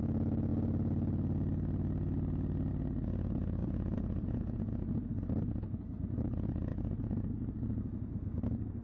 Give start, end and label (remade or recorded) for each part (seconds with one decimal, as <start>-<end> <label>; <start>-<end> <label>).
0.0-3.6 recorded; 3.6-4.8 remade; 4.8-6.7 recorded; 6.7-7.3 remade; 7.3-8.8 recorded